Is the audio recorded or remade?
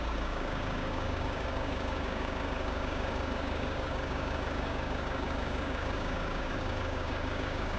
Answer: remade